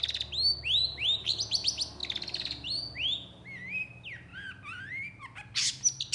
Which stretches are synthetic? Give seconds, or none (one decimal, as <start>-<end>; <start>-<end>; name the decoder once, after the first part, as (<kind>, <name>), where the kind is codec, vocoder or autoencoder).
none